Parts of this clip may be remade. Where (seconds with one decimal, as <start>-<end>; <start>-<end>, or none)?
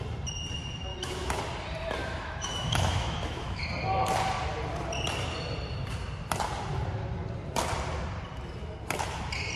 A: 0.9-1.4; 2.0-3.6